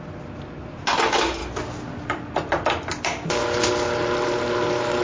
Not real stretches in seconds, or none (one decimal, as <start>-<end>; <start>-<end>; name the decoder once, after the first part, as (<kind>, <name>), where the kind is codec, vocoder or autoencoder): none